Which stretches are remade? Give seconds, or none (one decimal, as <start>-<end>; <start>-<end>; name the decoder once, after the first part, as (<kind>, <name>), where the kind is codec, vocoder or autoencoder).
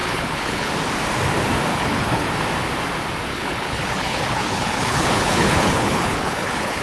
0.0-0.7 (codec, HILCodec); 1.7-2.3; 3.3-6.8